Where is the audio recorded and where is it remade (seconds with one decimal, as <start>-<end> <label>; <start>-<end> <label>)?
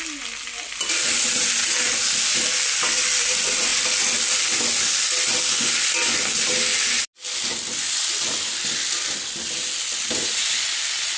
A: 0.0-11.2 recorded